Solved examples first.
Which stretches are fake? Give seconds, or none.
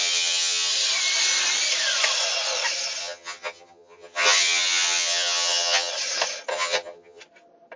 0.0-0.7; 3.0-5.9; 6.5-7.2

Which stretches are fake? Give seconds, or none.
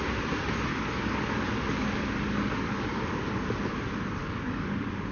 0.7-3.8; 4.2-5.1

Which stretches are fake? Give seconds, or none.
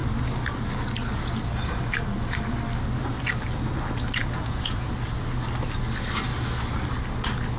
4.2-4.9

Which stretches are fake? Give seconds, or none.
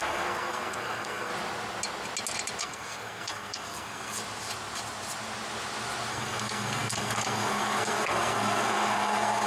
0.0-1.3; 2.6-4.2; 6.1-9.5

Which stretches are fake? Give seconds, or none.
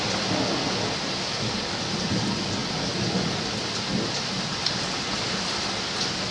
none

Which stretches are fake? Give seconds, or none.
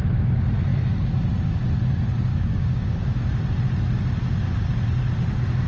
2.3-3.2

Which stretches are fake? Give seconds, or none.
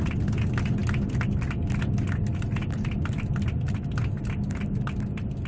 none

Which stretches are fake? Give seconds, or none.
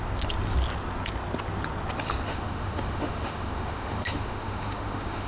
2.3-5.3